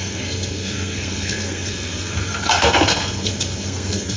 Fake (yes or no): yes